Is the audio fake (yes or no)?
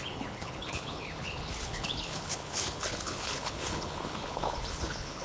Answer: yes